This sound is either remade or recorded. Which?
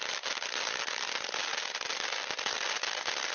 recorded